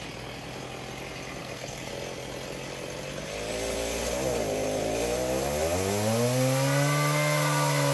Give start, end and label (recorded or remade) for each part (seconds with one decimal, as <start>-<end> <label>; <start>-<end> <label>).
0.0-1.4 recorded; 1.4-1.9 remade; 1.9-7.9 recorded